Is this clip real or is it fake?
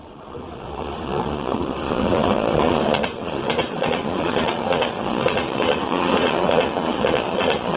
fake